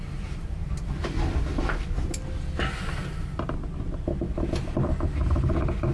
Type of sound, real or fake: real